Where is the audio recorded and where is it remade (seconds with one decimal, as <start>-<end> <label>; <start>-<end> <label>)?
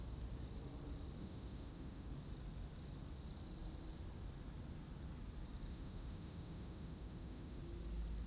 0.0-1.2 recorded; 1.2-2.1 remade; 2.1-5.7 recorded; 5.7-7.6 remade; 7.6-8.3 recorded